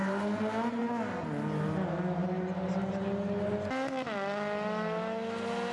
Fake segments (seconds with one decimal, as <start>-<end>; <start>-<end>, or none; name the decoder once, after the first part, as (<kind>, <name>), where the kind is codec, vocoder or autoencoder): 0.0-0.8 (vocoder, BigVGAN v2); 2.2-3.0